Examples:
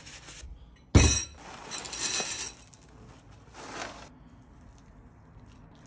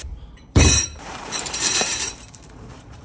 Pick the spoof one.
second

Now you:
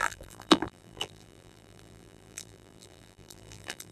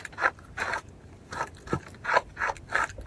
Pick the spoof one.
first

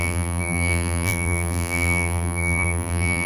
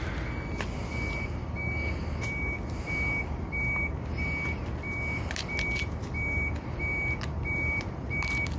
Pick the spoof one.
first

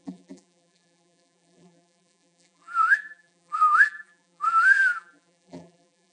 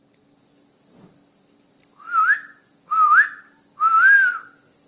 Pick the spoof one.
first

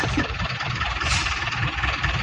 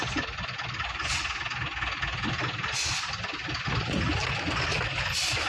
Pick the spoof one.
first